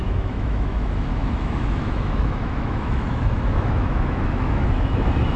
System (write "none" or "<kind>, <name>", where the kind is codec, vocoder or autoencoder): autoencoder, DAC-VAE